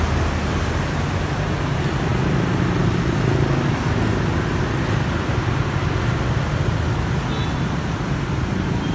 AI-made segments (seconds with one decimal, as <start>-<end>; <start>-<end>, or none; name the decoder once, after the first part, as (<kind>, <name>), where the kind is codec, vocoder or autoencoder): none